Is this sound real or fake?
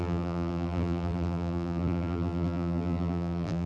fake